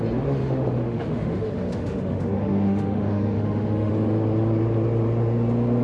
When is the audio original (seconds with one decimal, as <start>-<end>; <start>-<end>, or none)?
0.0-0.4; 3.9-5.8